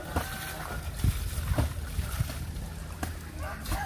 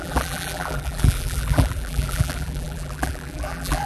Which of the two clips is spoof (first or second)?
second